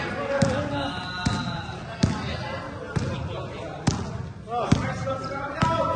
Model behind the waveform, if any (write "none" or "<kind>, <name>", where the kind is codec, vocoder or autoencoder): none